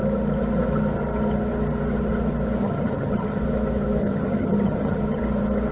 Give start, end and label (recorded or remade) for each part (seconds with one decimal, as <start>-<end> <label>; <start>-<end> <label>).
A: 0.0-2.6 recorded; 2.6-3.4 remade; 3.4-4.0 recorded; 4.0-5.0 remade; 5.0-5.7 recorded